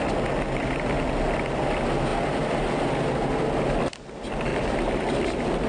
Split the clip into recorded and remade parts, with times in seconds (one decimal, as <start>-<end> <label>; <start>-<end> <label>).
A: 0.0-4.5 recorded; 4.5-5.1 remade; 5.1-5.7 recorded